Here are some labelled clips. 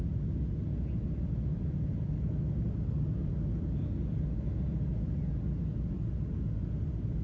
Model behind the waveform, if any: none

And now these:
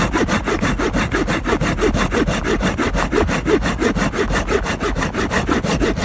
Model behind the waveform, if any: none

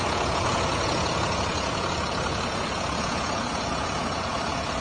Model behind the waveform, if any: vocoder, Vocos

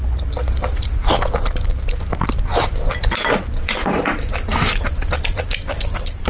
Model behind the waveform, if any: none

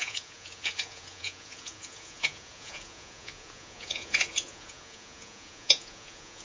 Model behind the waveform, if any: vocoder, Vocos